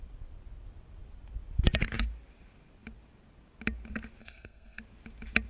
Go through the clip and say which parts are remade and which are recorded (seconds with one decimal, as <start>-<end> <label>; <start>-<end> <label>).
0.0-4.2 recorded; 4.2-4.8 remade; 4.8-5.5 recorded